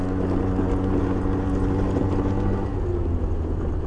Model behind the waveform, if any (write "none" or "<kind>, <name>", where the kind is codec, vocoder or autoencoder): none